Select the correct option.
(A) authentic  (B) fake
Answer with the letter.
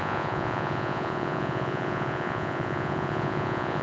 B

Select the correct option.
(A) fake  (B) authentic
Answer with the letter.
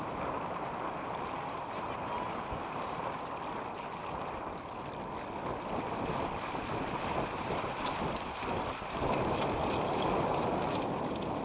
B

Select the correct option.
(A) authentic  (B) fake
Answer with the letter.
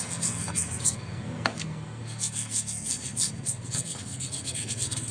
B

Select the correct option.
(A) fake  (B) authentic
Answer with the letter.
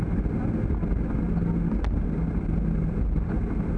B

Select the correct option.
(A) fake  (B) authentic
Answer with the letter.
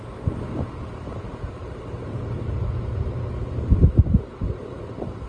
A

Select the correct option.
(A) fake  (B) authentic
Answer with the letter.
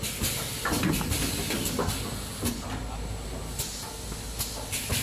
B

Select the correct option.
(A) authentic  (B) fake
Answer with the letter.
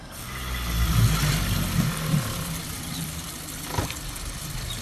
A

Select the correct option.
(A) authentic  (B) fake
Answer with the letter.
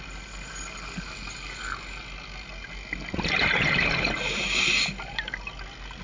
A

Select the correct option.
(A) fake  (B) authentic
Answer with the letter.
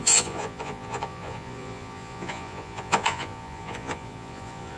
A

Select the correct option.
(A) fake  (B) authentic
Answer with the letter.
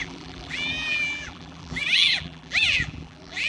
A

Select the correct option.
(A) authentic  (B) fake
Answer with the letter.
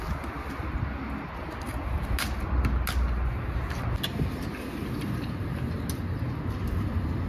A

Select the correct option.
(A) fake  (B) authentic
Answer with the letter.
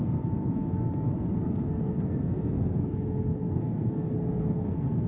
A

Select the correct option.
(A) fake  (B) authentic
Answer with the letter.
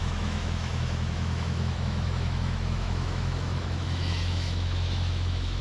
A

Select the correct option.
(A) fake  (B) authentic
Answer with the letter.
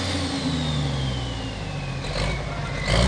B